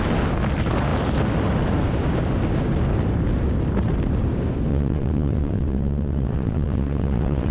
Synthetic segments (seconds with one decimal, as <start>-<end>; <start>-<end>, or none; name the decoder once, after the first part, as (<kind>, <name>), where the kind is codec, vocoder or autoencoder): 4.7-7.5 (vocoder, WaveNeXt)